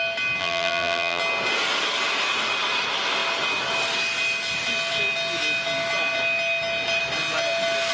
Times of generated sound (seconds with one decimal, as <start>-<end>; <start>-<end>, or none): 0.4-1.2